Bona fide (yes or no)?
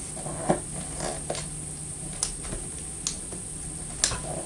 yes